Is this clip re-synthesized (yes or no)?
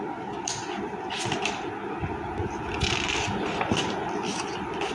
no